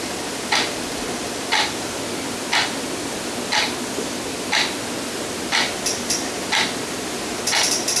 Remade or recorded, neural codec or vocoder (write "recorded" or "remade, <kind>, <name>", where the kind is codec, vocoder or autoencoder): recorded